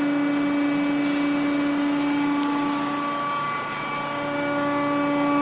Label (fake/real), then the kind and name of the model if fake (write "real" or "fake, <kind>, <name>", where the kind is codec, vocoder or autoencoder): real